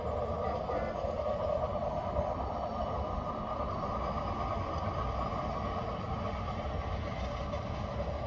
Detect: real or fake real